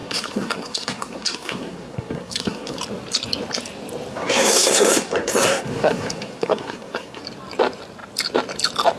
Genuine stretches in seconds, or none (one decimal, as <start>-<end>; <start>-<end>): 2.8-4.1; 7.2-9.0